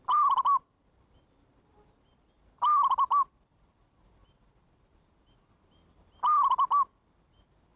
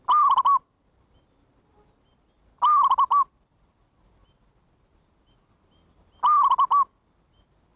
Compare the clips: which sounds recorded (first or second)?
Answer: second